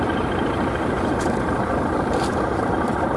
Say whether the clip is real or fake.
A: fake